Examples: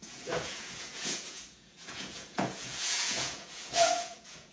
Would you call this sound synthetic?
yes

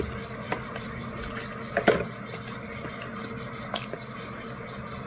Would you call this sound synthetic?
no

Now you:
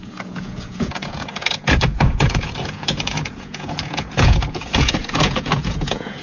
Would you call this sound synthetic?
yes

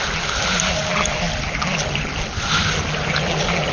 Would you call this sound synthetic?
no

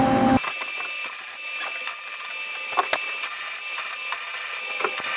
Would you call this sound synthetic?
no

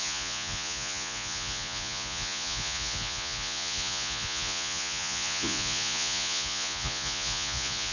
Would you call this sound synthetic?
yes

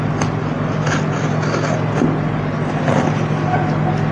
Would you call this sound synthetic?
no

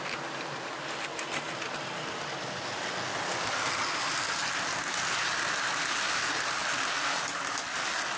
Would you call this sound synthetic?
no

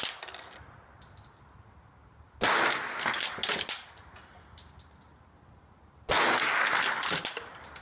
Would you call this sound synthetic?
no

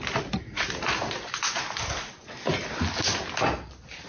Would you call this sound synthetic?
no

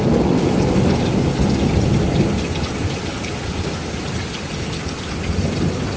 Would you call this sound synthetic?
no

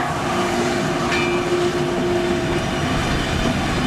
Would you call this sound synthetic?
no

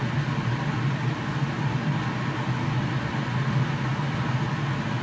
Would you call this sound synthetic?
no